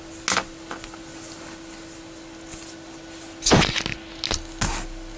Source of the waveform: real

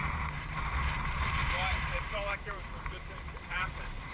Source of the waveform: fake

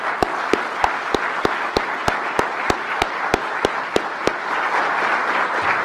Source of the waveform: real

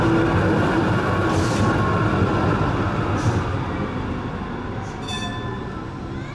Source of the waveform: real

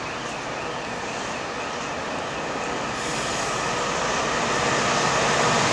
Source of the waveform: real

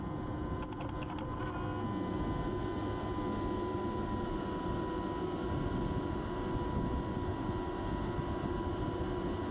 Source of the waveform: real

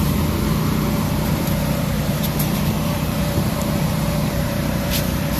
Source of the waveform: fake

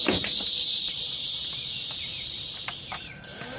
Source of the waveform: fake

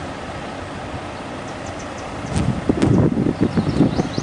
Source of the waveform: real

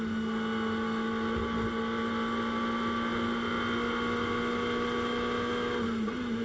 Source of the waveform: real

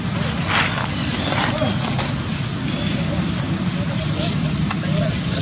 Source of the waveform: fake